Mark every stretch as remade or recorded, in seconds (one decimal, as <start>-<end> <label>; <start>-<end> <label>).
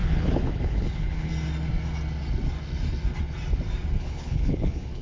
0.0-1.3 remade; 1.3-4.0 recorded; 4.0-5.0 remade